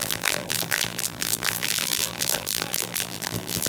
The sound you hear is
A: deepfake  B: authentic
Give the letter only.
A